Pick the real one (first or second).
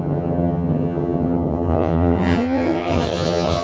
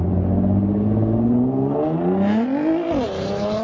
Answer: second